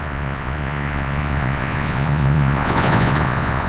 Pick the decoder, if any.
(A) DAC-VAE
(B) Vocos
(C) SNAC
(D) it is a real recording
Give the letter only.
B